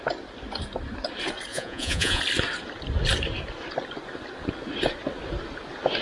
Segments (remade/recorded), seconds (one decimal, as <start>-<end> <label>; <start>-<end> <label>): 0.0-1.5 recorded; 1.5-2.2 remade; 2.2-6.0 recorded